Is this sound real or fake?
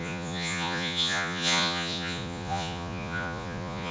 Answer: fake